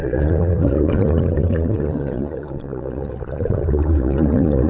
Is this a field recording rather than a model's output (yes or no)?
no